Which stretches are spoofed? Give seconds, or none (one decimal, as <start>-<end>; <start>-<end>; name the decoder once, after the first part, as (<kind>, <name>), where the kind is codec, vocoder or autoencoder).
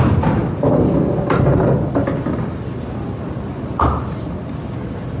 none